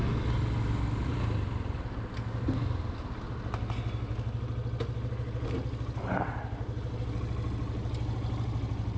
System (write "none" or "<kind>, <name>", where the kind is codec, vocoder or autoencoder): none